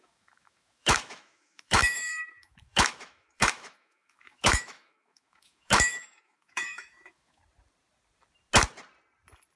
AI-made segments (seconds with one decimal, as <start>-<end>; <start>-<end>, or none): 0.0-7.4

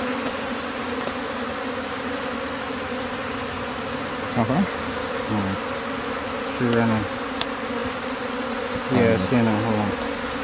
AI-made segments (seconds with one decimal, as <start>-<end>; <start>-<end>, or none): 7.8-8.6

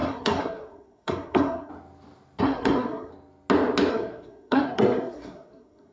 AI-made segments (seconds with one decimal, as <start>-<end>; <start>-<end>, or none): 0.0-1.7; 2.4-3.1; 3.9-5.9

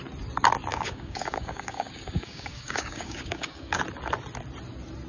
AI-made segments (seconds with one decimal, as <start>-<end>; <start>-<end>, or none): 0.7-3.8

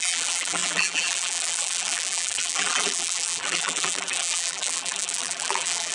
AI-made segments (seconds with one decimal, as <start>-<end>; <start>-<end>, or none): 0.0-5.9